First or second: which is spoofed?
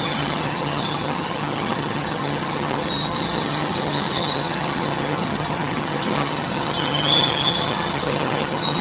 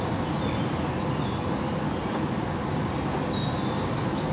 first